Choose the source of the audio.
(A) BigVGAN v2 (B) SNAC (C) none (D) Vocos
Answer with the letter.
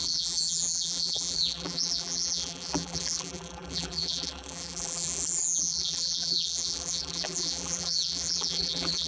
A